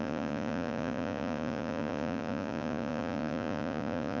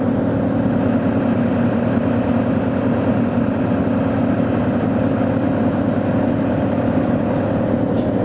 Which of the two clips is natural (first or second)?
second